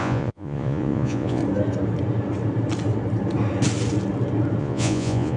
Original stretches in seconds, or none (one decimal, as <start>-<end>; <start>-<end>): 1.4-4.6